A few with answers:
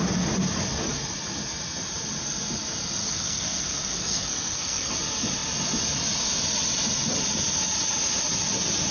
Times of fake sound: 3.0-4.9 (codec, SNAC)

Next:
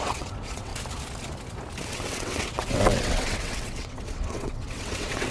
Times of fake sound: 0.0-0.7 (vocoder, WaveNeXt); 1.9-5.3